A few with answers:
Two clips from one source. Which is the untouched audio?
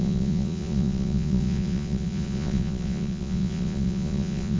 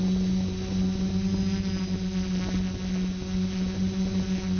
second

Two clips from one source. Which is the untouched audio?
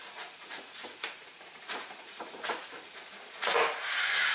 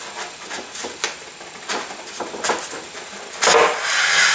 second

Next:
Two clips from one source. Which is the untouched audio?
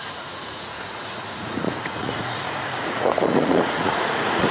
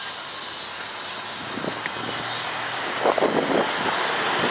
second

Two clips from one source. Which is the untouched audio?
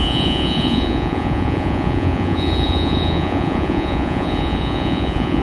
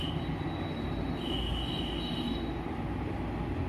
second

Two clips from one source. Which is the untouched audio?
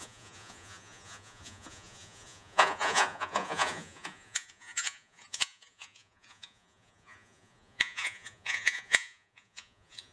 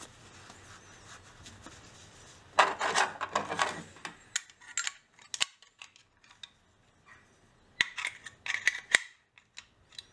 second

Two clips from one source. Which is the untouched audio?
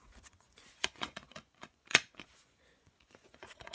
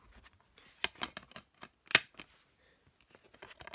second